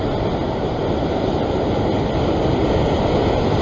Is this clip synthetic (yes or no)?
no